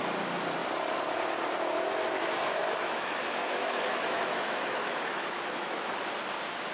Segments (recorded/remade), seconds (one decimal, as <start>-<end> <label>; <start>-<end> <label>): 0.0-2.6 recorded; 2.6-6.1 remade; 6.1-6.7 recorded